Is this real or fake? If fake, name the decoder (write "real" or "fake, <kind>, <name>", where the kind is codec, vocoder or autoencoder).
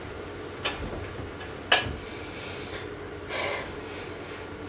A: real